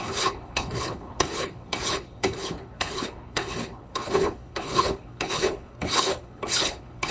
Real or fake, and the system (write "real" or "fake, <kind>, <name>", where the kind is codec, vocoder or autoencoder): fake, codec, HILCodec